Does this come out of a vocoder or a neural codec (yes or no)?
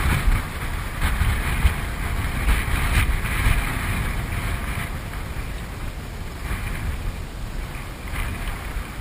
no